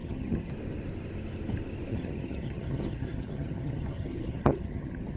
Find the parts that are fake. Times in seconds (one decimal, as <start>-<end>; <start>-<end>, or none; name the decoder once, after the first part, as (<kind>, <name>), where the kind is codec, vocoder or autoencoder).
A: 0.0-0.5 (vocoder, HiFi-GAN); 1.9-5.2